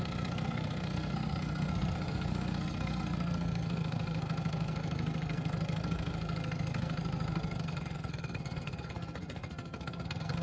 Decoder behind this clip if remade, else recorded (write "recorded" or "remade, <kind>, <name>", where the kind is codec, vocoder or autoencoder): remade, codec, SNAC